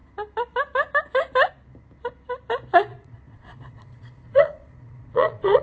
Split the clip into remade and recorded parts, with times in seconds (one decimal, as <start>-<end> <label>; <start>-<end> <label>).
0.0-2.9 recorded; 2.9-5.6 remade